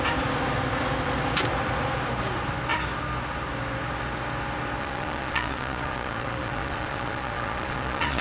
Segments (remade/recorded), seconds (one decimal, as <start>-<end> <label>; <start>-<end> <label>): 0.0-4.8 recorded; 4.8-8.2 remade